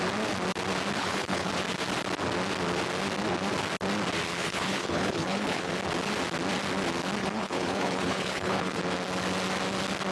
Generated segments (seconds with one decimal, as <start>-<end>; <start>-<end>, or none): 1.0-1.5; 4.4-5.7; 7.2-8.8